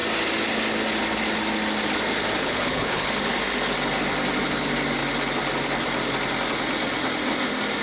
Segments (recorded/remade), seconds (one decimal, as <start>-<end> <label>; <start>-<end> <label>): 0.0-2.4 recorded; 2.4-3.1 remade; 3.1-7.8 recorded